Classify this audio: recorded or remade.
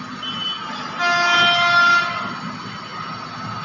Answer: recorded